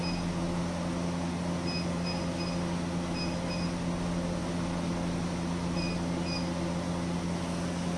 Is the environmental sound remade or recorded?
recorded